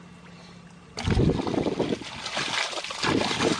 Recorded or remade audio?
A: recorded